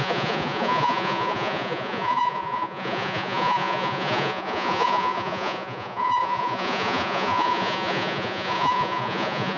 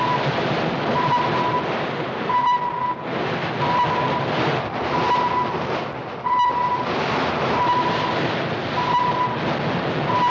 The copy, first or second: first